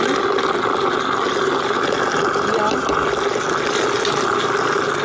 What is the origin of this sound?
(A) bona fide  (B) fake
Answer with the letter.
A